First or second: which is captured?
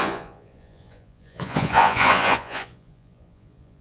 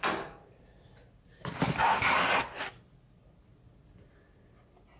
second